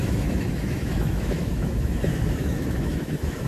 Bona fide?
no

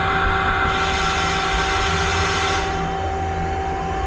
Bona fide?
yes